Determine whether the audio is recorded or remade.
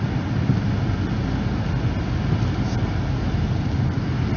recorded